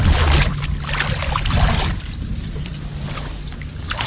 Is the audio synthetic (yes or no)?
no